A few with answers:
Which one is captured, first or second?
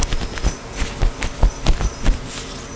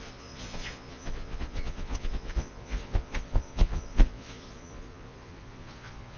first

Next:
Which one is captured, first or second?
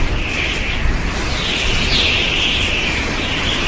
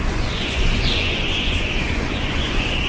first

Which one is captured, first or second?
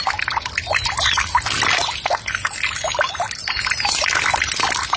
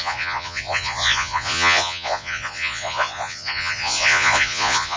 first